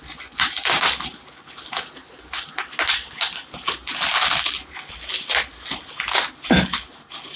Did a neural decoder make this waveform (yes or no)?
no